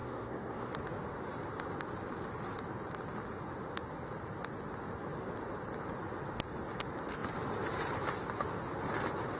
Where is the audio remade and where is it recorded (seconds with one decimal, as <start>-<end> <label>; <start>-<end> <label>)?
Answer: 0.0-0.7 remade; 0.7-9.4 recorded